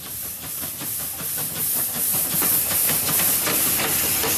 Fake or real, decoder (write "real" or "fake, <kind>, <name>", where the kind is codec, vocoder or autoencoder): real